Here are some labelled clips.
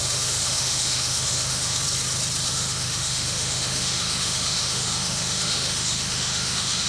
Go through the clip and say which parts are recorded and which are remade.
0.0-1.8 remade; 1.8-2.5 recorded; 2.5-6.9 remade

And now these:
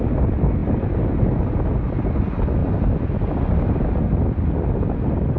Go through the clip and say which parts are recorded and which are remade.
0.0-5.4 recorded

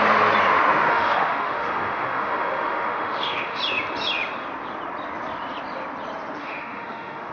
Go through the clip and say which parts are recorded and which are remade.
0.0-0.9 recorded; 0.9-3.6 remade; 3.6-6.4 recorded; 6.4-7.3 remade

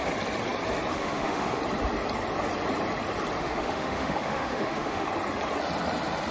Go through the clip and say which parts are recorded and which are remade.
0.0-0.9 recorded; 0.9-1.6 remade; 1.6-3.4 recorded; 3.4-5.1 remade; 5.1-6.3 recorded

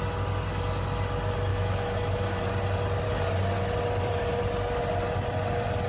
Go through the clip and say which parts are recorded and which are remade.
0.0-1.5 recorded; 1.5-2.2 remade; 2.2-5.9 recorded

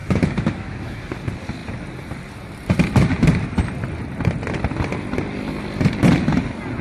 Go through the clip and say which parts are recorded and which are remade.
0.0-1.0 remade; 1.0-6.8 recorded

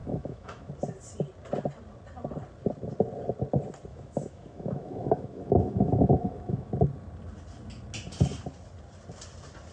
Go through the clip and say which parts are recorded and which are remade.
0.0-0.7 remade; 0.7-3.9 recorded; 3.9-6.7 remade; 6.7-9.7 recorded